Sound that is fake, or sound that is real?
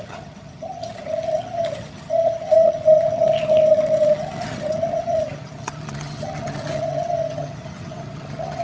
fake